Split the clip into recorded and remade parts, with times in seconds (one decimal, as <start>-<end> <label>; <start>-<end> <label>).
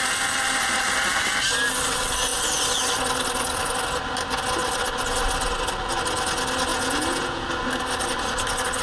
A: 0.0-6.7 recorded; 6.7-7.5 remade; 7.5-8.8 recorded